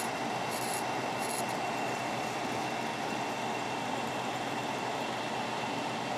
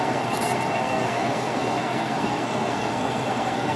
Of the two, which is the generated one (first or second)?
second